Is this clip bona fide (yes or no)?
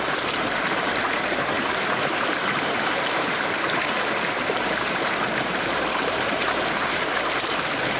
no